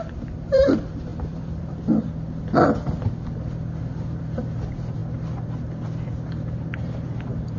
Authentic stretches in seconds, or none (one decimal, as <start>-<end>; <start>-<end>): 5.0-6.3